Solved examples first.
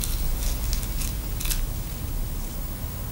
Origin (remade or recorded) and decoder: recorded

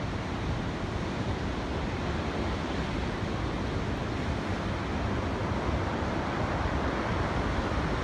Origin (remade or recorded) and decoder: recorded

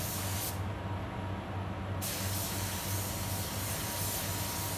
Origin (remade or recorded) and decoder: recorded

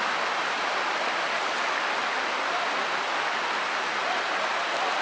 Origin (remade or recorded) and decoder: recorded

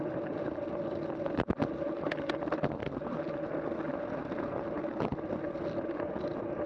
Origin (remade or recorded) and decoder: recorded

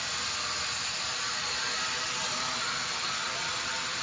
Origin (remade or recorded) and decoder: recorded